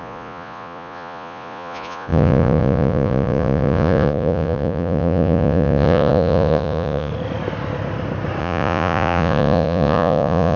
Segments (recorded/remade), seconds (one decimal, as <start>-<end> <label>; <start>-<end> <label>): 0.0-7.1 remade; 7.1-8.4 recorded; 8.4-10.6 remade